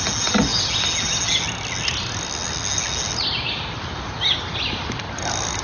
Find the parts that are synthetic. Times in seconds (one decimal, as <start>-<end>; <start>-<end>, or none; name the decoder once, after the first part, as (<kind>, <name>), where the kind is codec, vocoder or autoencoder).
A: none